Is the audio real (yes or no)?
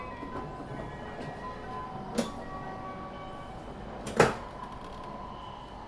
yes